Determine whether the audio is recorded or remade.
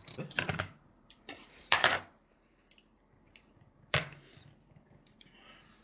remade